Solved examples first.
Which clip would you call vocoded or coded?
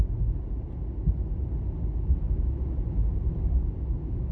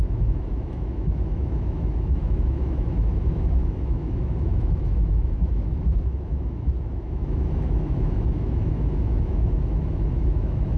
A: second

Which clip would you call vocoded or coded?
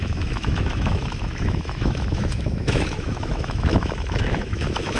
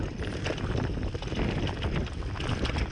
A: first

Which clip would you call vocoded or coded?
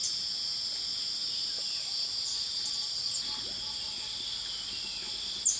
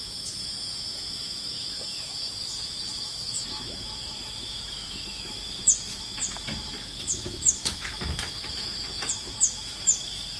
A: second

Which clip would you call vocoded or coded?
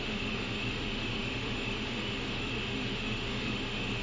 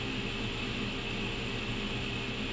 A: first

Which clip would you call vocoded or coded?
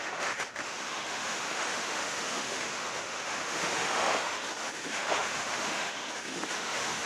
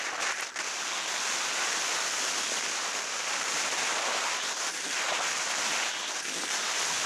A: first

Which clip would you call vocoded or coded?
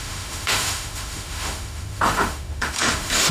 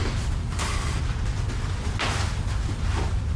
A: first